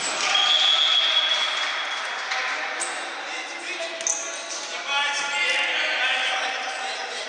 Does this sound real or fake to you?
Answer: real